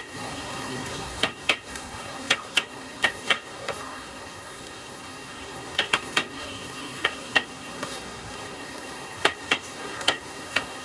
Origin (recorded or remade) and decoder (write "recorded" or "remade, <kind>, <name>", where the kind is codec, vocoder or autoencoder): remade, codec, SNAC